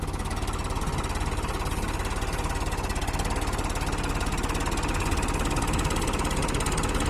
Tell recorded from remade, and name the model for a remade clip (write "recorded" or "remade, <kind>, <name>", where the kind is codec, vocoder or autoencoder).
recorded